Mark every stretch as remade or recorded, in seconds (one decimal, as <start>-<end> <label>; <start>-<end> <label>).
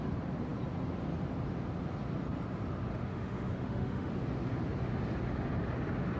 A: 0.0-2.9 recorded; 2.9-4.1 remade; 4.1-6.2 recorded